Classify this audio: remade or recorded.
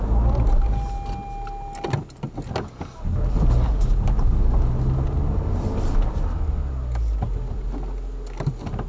recorded